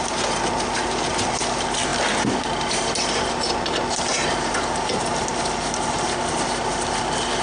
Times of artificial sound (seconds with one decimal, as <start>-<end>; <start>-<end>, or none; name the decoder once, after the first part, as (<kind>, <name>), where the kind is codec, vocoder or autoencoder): none